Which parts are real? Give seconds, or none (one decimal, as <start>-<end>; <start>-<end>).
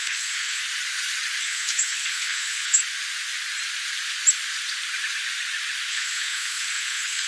0.6-1.4; 2.8-5.9